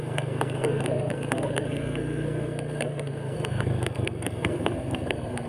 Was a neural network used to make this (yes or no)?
yes